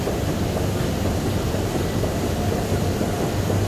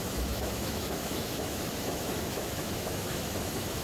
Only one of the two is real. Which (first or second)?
first